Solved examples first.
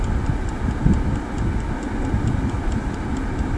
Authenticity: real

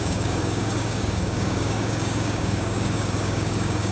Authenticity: fake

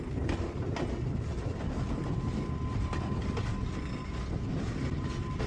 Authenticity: real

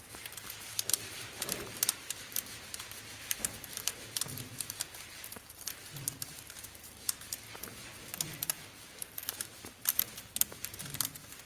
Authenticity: fake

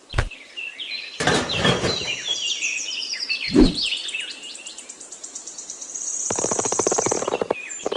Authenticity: fake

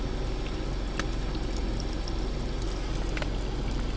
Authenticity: real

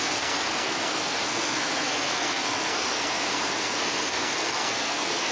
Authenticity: fake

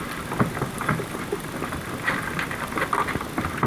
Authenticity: real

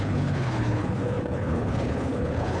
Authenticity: fake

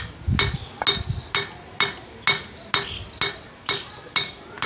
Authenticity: real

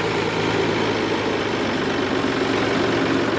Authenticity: real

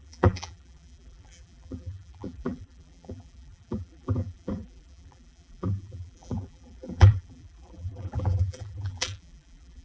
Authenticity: fake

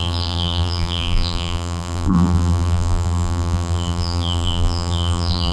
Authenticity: fake